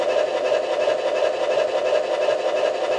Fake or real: real